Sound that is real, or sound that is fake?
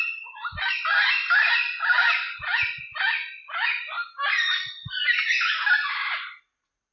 real